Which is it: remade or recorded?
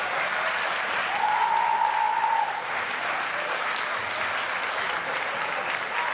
recorded